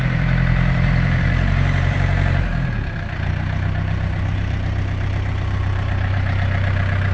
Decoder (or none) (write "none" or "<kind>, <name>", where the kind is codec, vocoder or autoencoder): vocoder, BigVGAN v2